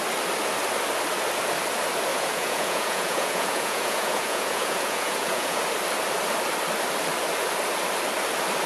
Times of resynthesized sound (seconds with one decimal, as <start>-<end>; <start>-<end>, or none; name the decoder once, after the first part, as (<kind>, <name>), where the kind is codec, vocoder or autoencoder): 2.1-5.6 (vocoder, Vocos)